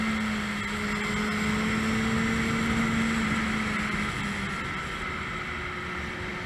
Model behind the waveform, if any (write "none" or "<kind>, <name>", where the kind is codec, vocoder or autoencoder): none